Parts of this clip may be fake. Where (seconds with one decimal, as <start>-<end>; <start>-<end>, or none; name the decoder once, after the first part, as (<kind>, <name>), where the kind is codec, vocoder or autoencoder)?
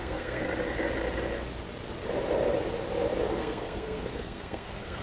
0.0-0.4 (codec, SNAC); 3.4-5.0